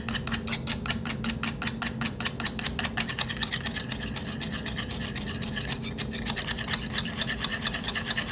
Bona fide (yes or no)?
yes